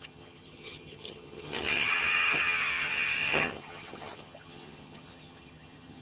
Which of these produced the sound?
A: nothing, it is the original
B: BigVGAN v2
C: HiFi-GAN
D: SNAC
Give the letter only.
C